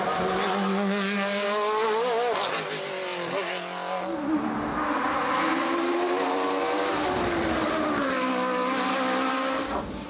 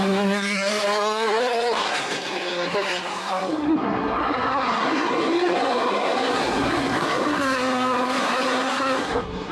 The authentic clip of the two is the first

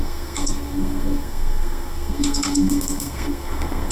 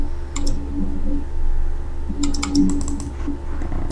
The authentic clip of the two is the second